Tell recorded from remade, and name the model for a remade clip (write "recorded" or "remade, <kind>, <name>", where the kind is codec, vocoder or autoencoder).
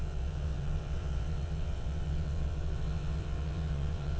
remade, vocoder, WaveNeXt